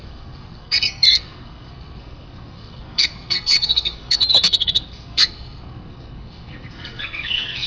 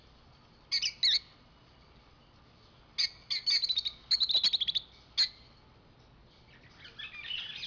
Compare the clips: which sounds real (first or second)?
second